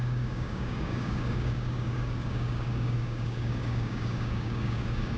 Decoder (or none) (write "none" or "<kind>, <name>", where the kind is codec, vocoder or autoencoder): codec, DAC